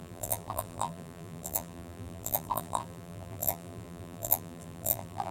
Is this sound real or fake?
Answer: fake